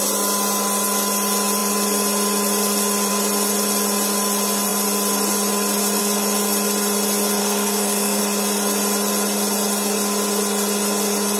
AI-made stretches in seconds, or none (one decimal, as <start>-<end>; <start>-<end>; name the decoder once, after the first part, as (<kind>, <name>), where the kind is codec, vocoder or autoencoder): 7.4-8.2 (codec, SNAC)